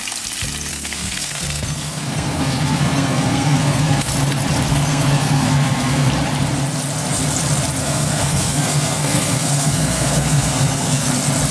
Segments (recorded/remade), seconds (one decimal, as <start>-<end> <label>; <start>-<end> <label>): 0.0-0.7 recorded; 0.7-4.1 remade; 4.1-4.7 recorded; 4.7-6.1 remade; 6.1-7.8 recorded; 7.8-11.1 remade; 11.1-11.5 recorded